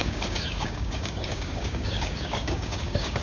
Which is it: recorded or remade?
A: remade